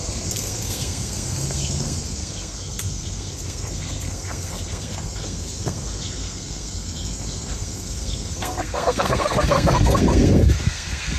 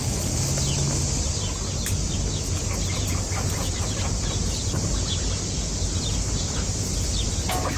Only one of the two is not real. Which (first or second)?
first